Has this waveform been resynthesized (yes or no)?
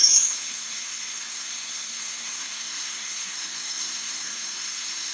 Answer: yes